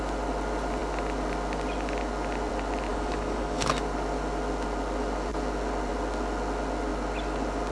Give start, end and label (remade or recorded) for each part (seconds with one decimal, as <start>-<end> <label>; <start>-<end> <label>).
0.0-2.9 recorded; 2.9-3.7 remade; 3.7-7.7 recorded